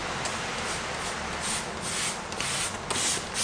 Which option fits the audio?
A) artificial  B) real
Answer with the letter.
B